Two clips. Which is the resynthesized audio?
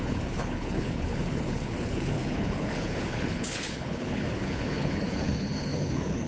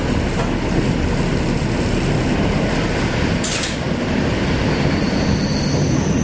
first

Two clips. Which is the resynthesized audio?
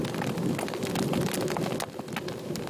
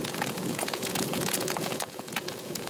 second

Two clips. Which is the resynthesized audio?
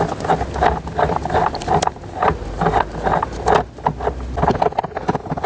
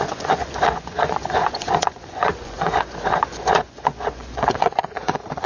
second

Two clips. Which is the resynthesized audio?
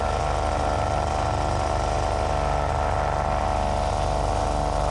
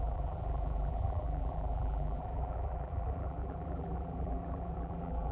second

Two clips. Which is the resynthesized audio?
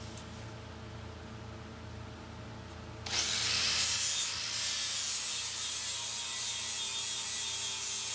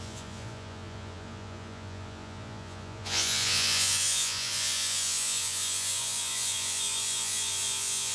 second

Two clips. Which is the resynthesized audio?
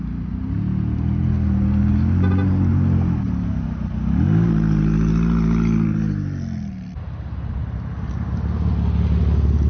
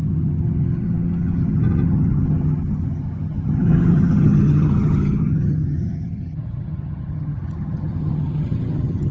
second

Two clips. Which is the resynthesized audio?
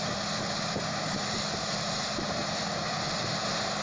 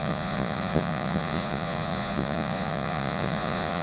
second